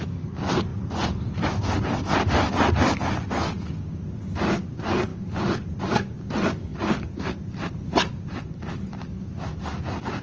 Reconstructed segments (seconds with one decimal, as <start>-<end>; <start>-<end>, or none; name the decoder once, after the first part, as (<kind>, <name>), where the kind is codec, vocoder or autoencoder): none